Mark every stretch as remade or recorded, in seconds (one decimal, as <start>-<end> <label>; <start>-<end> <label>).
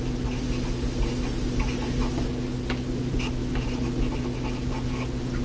0.0-5.4 recorded